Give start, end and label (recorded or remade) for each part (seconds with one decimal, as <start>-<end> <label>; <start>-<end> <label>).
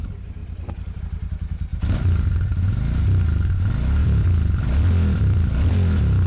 0.0-0.4 recorded; 0.4-1.0 remade; 1.0-1.7 recorded; 1.7-3.0 remade; 3.0-4.0 recorded; 4.0-5.7 remade; 5.7-6.3 recorded